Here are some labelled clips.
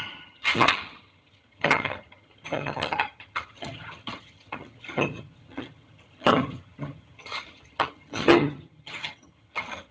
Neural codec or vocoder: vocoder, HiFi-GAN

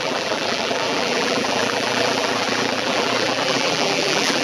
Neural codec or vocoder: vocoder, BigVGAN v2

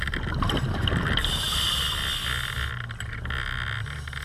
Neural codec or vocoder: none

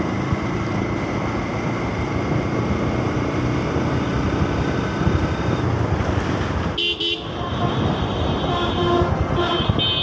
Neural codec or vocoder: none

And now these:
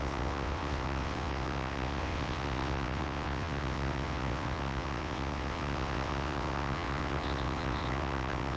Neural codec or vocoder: vocoder, WaveNeXt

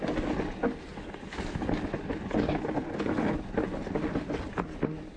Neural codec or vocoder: none